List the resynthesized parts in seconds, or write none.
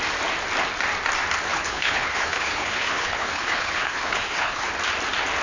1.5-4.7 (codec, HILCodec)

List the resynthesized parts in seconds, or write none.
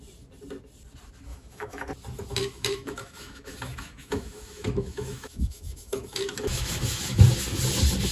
1.3-1.9 (autoencoder, DAC-VAE); 2.3-7.2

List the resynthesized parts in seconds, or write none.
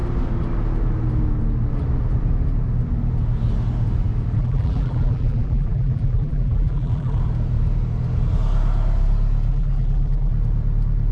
4.3-7.2 (vocoder, BigVGAN v2); 9.5-10.3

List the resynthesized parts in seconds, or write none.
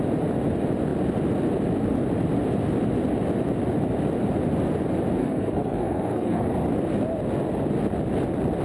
5.2-6.5 (codec, SNAC)